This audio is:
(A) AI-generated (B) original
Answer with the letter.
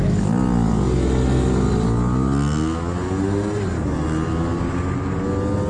B